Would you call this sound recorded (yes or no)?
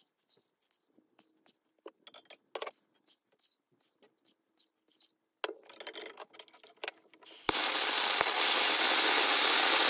yes